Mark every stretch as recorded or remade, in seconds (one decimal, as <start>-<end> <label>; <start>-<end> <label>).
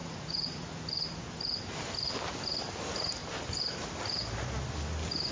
0.0-0.7 remade; 0.7-5.3 recorded